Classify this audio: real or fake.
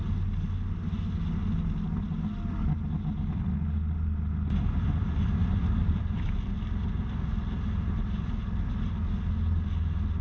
real